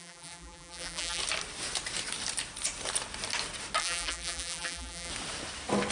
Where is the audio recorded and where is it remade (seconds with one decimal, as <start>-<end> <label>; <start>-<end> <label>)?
0.0-1.2 remade; 1.2-3.8 recorded; 3.8-5.1 remade; 5.1-5.9 recorded